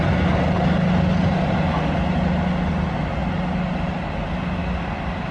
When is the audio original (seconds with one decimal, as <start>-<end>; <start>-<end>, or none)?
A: 0.0-5.3